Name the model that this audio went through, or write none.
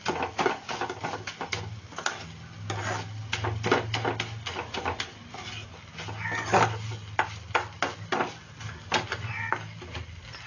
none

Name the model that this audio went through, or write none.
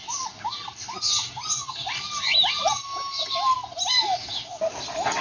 none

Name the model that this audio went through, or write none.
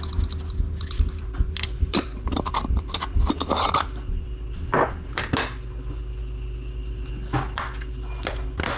none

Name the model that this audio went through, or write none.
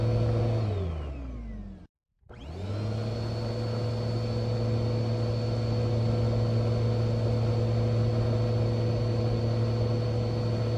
none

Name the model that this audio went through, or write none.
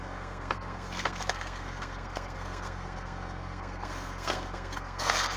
codec, SNAC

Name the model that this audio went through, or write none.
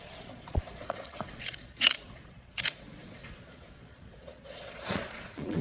vocoder, Vocos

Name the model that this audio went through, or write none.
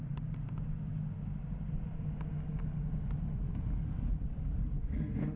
none